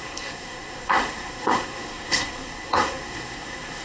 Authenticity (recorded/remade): remade